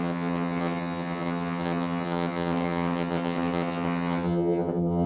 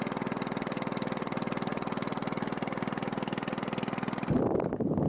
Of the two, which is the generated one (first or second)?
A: first